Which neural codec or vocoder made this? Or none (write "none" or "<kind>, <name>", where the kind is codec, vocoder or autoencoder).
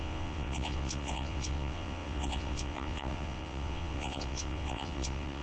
vocoder, WaveNeXt